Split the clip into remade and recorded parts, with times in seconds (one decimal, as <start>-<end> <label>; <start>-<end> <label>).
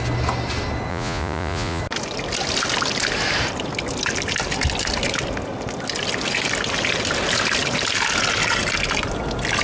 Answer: 0.0-0.9 recorded; 0.9-1.8 remade; 1.8-9.6 recorded